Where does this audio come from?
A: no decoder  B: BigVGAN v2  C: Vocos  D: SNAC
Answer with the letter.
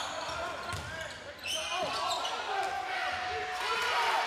A